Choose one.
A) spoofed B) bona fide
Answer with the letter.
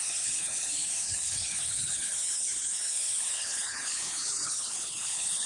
A